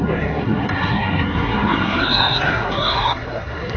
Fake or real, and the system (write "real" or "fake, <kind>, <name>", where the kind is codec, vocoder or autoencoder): fake, codec, SNAC